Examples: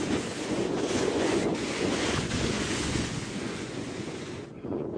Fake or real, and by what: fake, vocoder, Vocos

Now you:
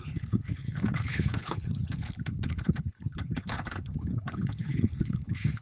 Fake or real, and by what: fake, codec, HILCodec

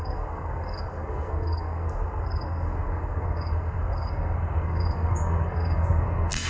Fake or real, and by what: fake, codec, SNAC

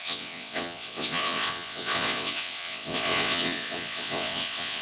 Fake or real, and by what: fake, vocoder, WaveNeXt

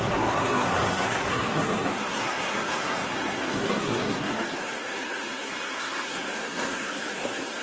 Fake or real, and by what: fake, codec, SNAC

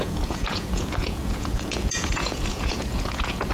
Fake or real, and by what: fake, vocoder, Vocos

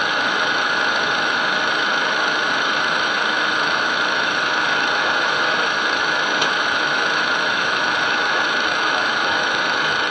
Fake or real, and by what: fake, autoencoder, DAC-VAE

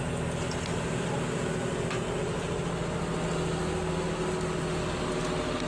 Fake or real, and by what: real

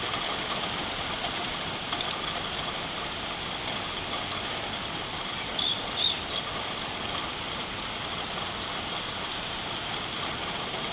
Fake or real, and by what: fake, vocoder, BigVGAN v2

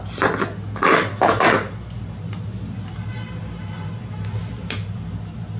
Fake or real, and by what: real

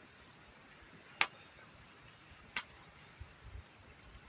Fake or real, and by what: real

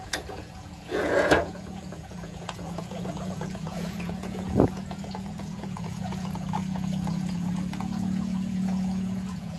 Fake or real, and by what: fake, vocoder, Vocos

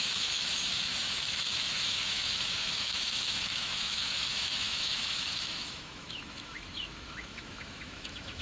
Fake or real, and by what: fake, autoencoder, DAC-VAE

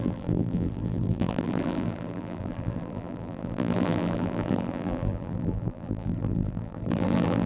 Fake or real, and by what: fake, vocoder, BigVGAN v2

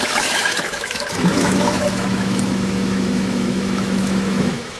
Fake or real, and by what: fake, autoencoder, DAC-VAE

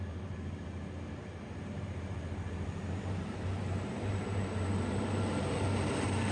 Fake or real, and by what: fake, vocoder, BigVGAN v2